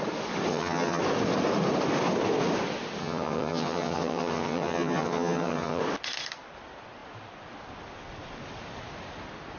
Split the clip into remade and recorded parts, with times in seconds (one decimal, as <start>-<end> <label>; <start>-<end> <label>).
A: 0.0-0.5 recorded; 0.5-1.0 remade; 1.0-3.0 recorded; 3.0-5.8 remade; 5.8-9.6 recorded